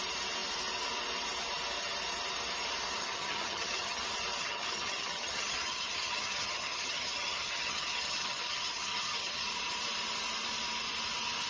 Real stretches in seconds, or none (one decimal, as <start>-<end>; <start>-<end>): 0.0-3.0; 4.0-4.4; 9.5-11.5